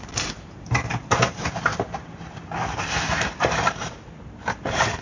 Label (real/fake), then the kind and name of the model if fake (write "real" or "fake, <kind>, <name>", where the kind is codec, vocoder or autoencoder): fake, vocoder, BigVGAN v2